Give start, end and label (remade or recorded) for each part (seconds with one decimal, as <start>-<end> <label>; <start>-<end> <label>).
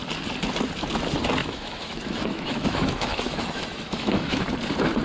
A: 0.0-1.4 recorded; 1.4-4.4 remade; 4.4-5.0 recorded